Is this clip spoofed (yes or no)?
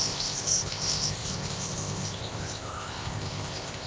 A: yes